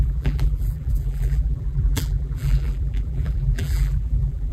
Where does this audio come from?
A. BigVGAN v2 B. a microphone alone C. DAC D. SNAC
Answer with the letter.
A